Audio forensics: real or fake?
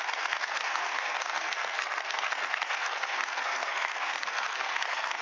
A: fake